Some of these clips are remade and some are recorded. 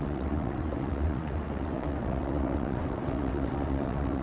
remade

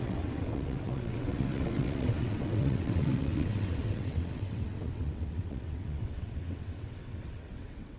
remade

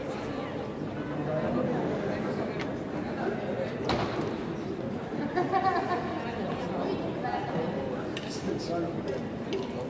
recorded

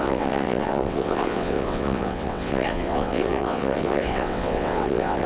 remade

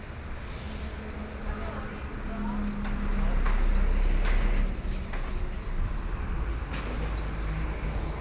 recorded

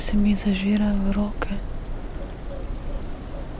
recorded